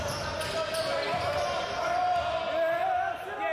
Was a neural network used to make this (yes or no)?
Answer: no